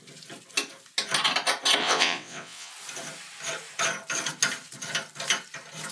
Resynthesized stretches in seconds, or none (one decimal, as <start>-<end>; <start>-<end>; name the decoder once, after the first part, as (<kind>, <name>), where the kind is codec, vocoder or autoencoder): 1.8-2.7 (vocoder, WaveNeXt)